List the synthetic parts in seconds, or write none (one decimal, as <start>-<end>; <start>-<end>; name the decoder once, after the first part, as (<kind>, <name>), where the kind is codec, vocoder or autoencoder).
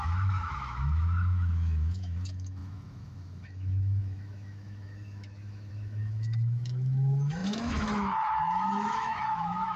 0.0-9.8 (autoencoder, DAC-VAE)